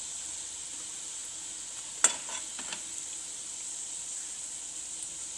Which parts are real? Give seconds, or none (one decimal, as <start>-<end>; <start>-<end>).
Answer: 0.0-5.4